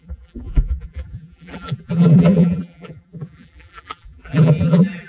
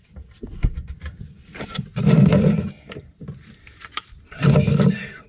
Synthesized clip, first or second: first